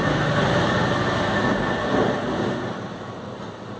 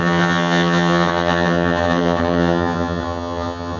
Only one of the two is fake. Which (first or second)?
second